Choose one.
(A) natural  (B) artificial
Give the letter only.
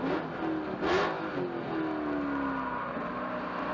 A